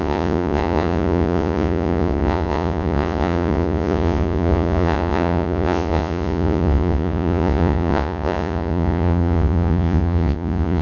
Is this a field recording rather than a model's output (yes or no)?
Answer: no